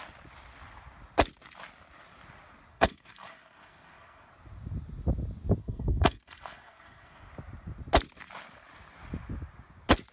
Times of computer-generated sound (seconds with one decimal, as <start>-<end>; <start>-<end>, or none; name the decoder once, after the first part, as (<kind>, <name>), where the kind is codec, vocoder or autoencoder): 2.7-4.3 (codec, SNAC); 5.6-7.3